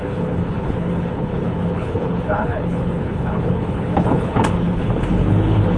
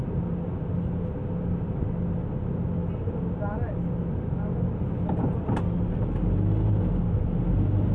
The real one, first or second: second